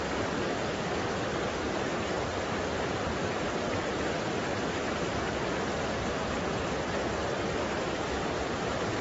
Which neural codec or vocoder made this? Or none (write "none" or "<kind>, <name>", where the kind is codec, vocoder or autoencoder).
none